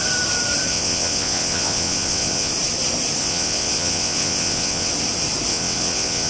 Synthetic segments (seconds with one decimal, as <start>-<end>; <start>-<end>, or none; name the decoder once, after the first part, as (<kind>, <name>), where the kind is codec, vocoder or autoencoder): 0.7-2.5 (vocoder, WaveNeXt); 3.2-4.9; 5.5-6.3